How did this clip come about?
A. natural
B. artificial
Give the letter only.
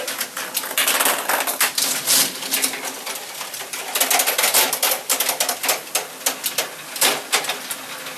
A